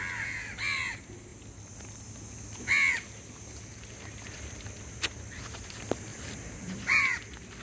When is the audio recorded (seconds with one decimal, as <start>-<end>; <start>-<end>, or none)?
0.0-6.1; 7.0-7.6